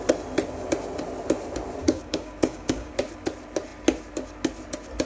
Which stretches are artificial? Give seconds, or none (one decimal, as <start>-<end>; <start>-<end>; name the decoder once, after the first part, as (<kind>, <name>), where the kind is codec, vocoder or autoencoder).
1.8-2.9 (codec, DAC)